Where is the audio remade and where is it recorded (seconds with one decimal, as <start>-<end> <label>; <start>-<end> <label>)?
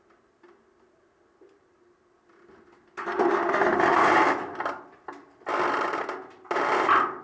0.0-7.2 recorded